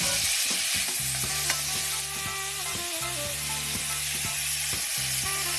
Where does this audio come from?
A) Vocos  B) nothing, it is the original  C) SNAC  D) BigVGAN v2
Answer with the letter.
B